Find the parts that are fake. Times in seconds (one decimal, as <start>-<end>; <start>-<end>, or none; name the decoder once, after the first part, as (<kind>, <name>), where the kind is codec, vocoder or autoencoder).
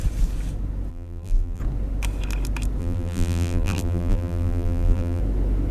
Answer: 0.9-1.6 (vocoder, BigVGAN v2); 2.8-5.2